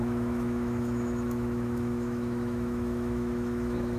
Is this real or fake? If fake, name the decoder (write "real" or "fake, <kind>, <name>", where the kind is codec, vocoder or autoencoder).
fake, autoencoder, DAC-VAE